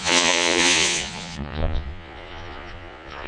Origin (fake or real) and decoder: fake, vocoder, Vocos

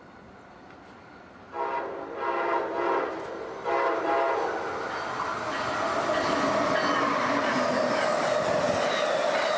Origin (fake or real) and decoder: real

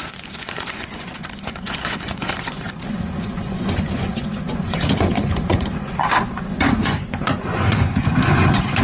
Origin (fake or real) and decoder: fake, vocoder, Vocos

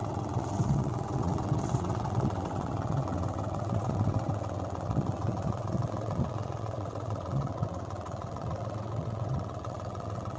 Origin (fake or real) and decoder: fake, vocoder, WaveNeXt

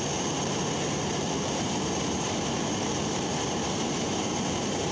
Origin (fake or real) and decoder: fake, vocoder, BigVGAN v2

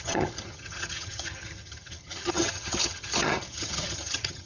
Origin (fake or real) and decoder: fake, vocoder, HiFi-GAN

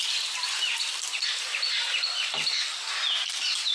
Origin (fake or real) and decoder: fake, vocoder, BigVGAN v2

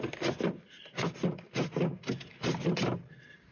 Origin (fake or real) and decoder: real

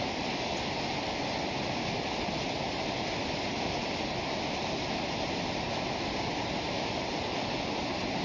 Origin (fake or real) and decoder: real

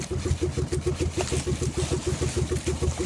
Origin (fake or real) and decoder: real